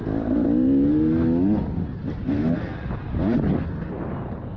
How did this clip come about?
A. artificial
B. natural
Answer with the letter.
B